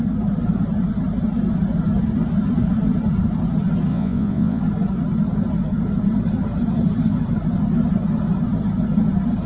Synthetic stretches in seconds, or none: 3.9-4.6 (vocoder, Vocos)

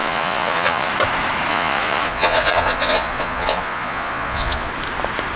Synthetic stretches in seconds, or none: 0.0-0.9 (vocoder, Vocos); 1.5-4.7